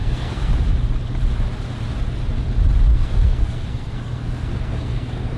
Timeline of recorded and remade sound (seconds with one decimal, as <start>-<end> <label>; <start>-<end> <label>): 0.0-0.5 remade; 0.5-2.9 recorded; 2.9-5.4 remade